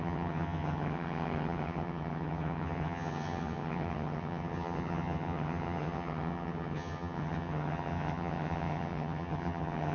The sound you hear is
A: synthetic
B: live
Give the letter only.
A